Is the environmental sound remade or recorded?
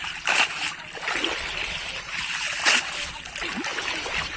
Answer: recorded